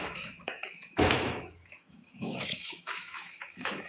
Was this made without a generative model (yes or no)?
no